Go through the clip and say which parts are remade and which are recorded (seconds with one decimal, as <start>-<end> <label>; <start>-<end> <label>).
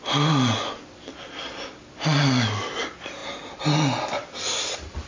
0.0-5.1 recorded